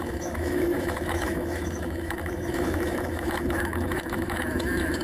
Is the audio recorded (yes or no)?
no